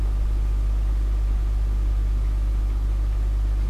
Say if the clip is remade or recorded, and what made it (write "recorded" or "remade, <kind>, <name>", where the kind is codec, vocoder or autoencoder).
recorded